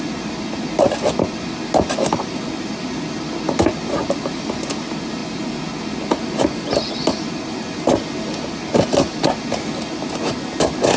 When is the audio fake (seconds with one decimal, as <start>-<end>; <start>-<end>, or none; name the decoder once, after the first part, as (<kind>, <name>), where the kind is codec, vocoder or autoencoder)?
none